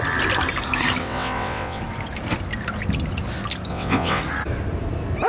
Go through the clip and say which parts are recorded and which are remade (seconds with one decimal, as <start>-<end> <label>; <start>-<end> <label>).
0.0-1.0 recorded; 1.0-1.8 remade; 1.8-3.7 recorded; 3.7-4.2 remade; 4.2-5.3 recorded